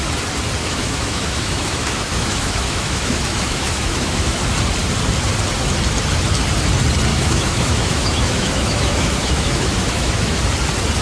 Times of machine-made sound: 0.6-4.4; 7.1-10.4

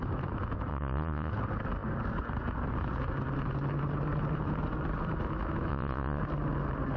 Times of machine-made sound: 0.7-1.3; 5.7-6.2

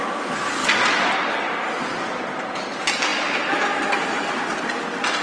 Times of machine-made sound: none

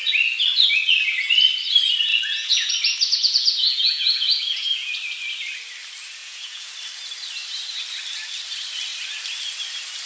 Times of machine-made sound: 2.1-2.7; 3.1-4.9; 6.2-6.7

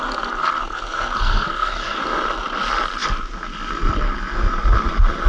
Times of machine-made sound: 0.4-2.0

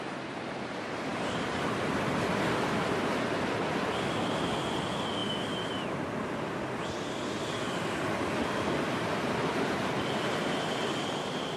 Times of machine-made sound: none

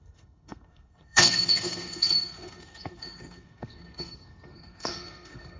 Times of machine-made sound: 0.0-5.6